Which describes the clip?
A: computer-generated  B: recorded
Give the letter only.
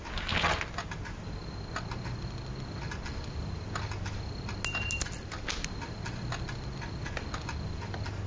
B